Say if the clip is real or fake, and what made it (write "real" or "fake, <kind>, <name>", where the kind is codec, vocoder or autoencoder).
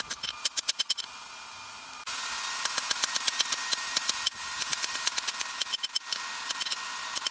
real